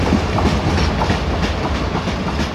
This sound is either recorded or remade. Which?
recorded